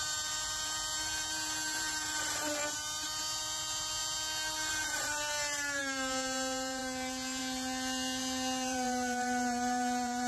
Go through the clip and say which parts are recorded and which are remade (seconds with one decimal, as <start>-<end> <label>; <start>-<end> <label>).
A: 0.0-2.6 remade; 2.6-3.4 recorded; 3.4-4.0 remade; 4.0-4.7 recorded; 4.7-10.3 remade

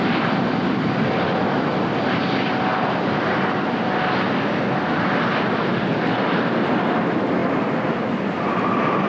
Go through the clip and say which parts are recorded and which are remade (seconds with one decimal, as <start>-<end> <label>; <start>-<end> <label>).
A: 0.0-9.1 recorded